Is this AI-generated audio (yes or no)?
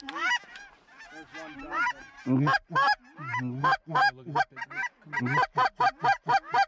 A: no